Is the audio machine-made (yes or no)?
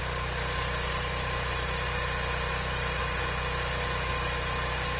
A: no